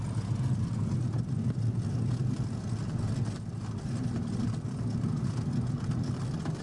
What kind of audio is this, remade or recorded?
recorded